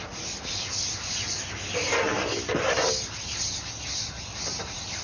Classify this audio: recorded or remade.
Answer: recorded